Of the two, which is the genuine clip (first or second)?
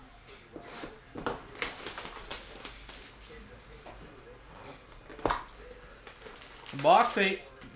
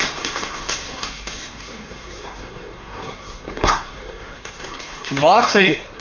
first